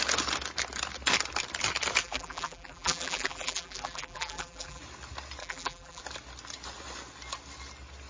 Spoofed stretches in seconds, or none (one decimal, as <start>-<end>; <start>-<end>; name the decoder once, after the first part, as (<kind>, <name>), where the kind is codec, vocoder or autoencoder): 2.0-4.8 (vocoder, BigVGAN v2); 5.4-6.0

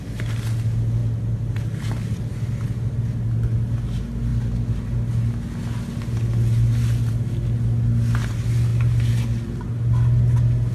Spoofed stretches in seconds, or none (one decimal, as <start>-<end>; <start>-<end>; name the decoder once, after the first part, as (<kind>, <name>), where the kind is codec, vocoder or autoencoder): none